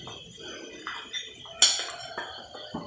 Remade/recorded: recorded